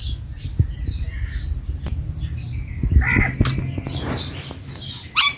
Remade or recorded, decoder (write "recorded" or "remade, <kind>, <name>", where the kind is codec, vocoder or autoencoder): recorded